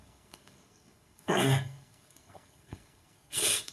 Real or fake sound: fake